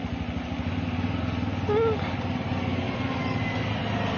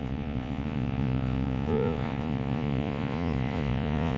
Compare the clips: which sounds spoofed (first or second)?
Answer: second